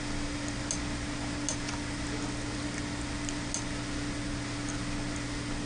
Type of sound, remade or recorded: recorded